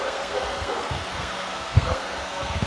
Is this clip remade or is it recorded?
remade